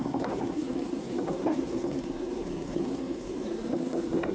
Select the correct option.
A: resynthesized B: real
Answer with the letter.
A